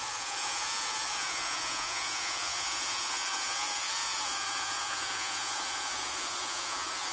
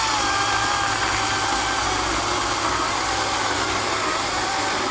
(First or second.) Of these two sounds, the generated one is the first